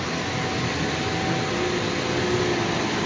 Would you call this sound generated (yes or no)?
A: no